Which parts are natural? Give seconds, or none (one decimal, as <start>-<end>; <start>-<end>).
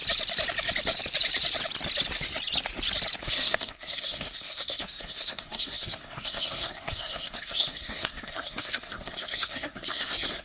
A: 0.0-3.2